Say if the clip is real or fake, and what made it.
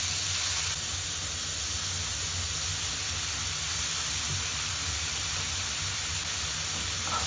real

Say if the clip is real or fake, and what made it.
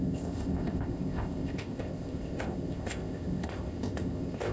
fake, codec, ZipCodec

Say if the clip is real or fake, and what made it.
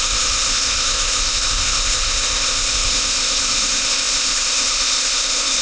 fake, codec, ZipCodec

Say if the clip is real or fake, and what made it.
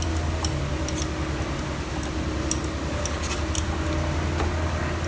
real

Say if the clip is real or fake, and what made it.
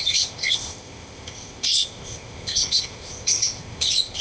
fake, codec, ZipCodec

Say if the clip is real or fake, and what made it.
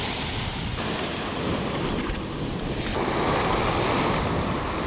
real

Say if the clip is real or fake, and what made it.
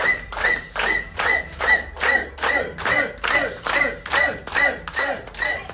real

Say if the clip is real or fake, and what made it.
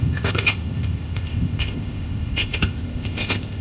fake, codec, ZipCodec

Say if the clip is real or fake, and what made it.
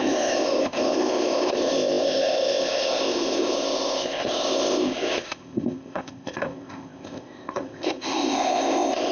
fake, codec, ZipCodec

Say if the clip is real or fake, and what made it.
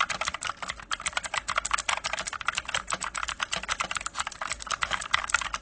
real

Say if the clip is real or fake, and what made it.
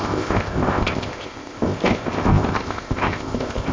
fake, codec, ZipCodec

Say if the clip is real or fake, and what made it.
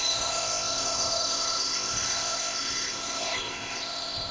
fake, codec, ZipCodec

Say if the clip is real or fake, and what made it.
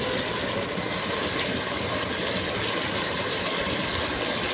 real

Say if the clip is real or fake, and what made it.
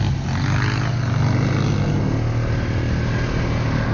real